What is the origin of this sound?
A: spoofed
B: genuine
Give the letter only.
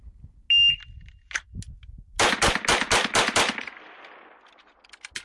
B